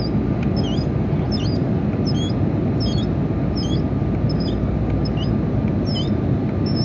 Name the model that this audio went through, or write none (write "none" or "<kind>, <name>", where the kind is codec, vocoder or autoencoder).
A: none